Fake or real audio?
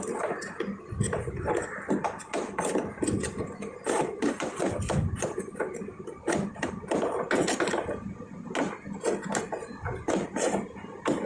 real